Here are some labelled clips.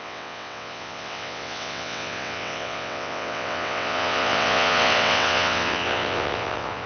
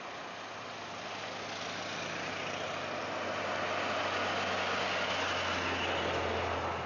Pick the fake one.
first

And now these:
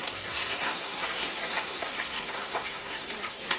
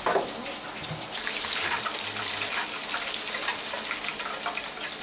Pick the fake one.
first